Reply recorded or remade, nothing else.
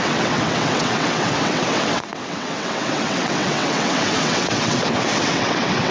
remade